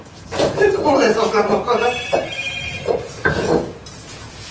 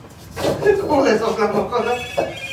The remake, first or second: first